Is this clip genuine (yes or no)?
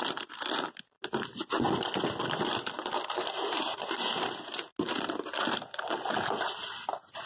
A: yes